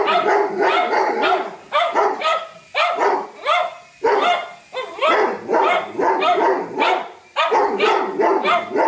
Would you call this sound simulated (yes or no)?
no